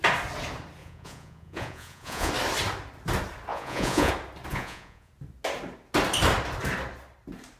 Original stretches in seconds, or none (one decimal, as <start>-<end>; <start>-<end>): 0.0-0.8; 2.3-3.5; 4.1-4.5; 5.1-7.6